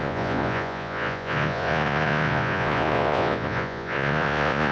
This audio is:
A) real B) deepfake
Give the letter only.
B